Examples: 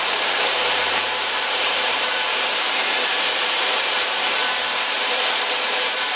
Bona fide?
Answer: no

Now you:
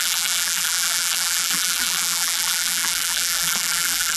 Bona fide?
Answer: no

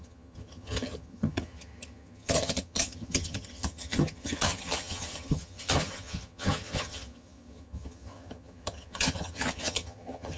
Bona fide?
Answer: no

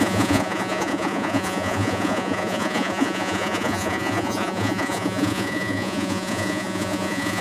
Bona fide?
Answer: no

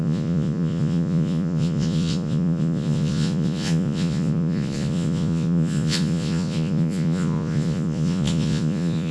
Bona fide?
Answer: no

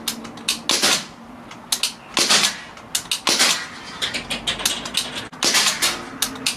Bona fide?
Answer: yes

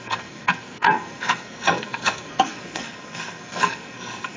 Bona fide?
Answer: no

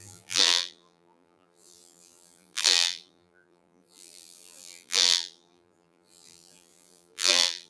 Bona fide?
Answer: no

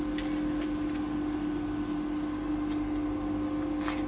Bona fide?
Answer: yes